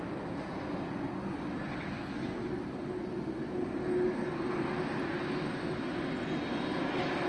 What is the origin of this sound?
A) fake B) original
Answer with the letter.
B